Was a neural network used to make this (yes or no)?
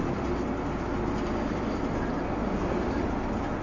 no